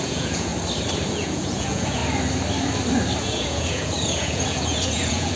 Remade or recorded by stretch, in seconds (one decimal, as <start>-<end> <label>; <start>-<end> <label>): 0.0-0.5 remade; 0.5-1.1 recorded; 1.1-2.0 remade; 2.0-3.2 recorded; 3.2-5.4 remade